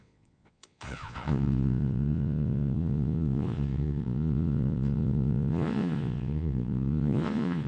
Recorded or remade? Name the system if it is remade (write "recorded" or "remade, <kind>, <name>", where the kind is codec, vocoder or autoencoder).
remade, vocoder, Vocos